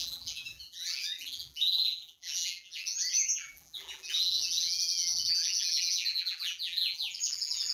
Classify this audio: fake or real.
fake